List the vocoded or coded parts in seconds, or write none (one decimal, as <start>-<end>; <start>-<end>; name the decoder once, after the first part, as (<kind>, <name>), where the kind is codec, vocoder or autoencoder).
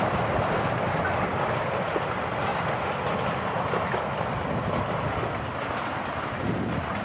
none